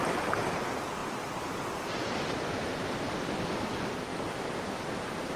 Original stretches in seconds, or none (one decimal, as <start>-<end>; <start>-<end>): 0.0-1.0; 3.3-5.4